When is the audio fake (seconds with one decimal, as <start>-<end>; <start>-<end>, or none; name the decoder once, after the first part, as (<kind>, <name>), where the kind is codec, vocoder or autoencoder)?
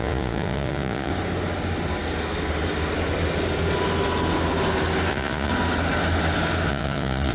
0.0-1.1 (vocoder, Vocos); 5.1-5.5; 6.7-7.3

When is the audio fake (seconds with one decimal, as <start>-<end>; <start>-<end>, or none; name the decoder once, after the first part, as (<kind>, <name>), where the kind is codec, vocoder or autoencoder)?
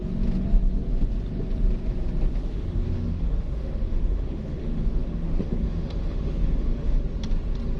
2.3-7.0 (autoencoder, DAC-VAE)